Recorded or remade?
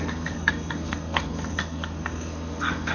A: remade